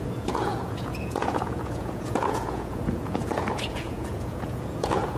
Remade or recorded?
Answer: remade